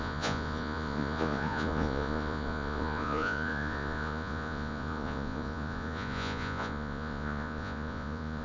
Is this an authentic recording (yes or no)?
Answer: no